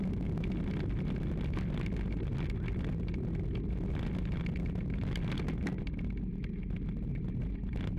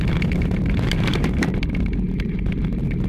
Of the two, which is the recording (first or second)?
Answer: first